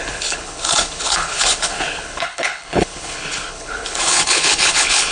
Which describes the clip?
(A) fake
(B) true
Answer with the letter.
A